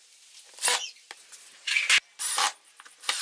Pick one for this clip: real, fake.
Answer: real